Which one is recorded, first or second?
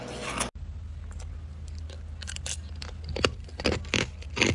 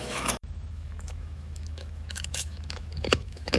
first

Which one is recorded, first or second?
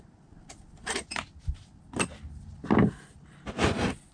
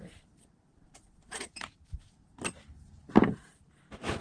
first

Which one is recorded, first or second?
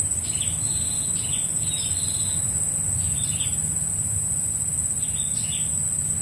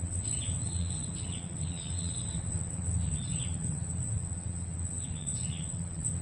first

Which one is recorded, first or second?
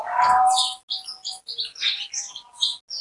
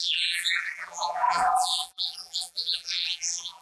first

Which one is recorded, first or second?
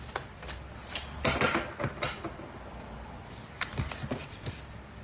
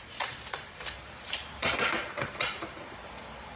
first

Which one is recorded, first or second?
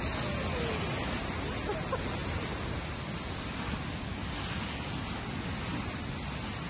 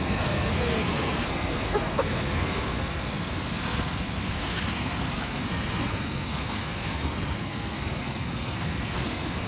first